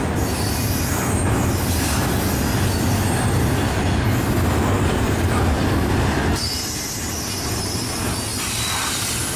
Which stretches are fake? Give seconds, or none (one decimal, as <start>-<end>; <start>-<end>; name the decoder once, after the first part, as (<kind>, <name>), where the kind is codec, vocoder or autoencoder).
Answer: none